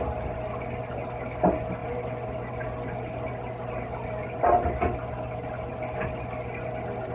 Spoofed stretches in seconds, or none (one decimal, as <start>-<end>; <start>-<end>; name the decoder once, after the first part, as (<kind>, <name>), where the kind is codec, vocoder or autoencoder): none